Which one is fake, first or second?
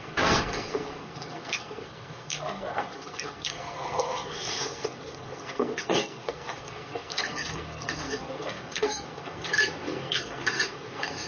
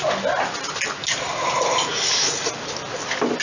first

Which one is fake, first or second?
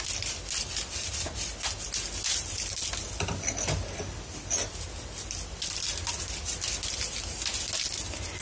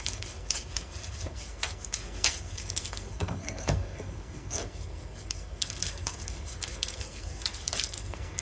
second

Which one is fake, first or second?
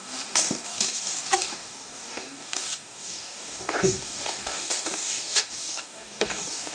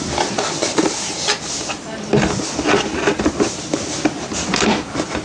first